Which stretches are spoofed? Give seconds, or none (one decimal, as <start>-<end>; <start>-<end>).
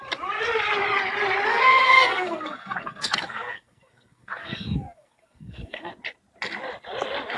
1.5-5.9